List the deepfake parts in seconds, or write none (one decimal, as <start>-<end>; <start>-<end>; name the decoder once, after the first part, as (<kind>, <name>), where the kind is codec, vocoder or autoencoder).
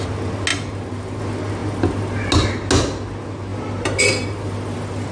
none